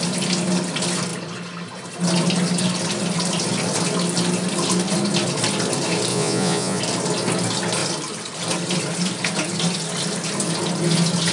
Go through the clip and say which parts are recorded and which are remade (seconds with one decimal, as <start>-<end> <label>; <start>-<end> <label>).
0.0-6.1 recorded; 6.1-6.8 remade; 6.8-11.3 recorded

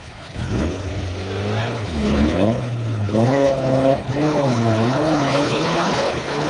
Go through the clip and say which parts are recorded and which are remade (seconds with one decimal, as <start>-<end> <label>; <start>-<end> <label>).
0.0-0.9 remade; 0.9-1.6 recorded; 1.6-6.5 remade